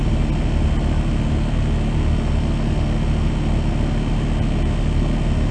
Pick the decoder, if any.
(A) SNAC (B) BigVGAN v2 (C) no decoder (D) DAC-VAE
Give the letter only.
C